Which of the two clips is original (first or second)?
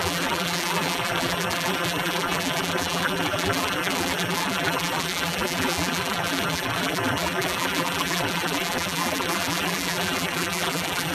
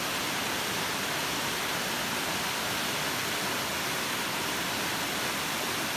second